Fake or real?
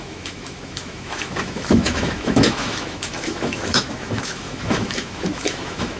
fake